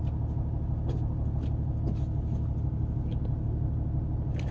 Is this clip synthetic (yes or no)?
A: no